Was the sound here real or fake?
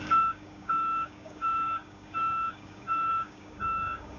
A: fake